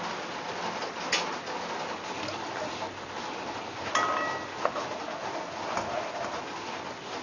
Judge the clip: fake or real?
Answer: real